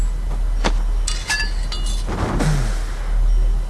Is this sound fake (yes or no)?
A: no